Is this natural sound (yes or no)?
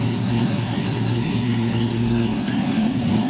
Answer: no